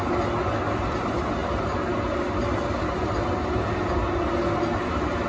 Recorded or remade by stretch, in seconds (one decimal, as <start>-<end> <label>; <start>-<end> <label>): 0.0-5.3 recorded

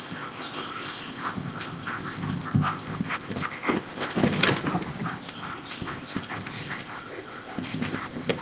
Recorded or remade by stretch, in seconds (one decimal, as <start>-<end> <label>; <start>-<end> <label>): 0.0-4.4 remade; 4.4-5.1 recorded; 5.1-8.4 remade

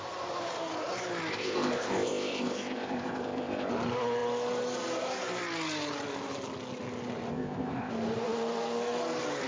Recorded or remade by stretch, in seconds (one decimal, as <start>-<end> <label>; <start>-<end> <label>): 0.0-1.3 recorded; 1.3-3.7 remade; 3.7-7.3 recorded; 7.3-7.9 remade; 7.9-9.5 recorded